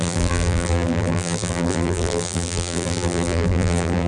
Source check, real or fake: fake